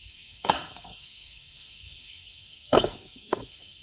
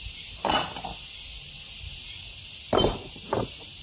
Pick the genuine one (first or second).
second